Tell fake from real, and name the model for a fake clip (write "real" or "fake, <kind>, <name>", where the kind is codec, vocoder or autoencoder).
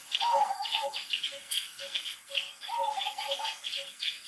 fake, codec, SNAC